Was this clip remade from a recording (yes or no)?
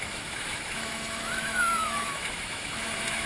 yes